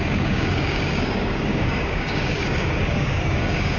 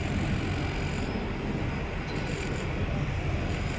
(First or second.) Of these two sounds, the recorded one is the second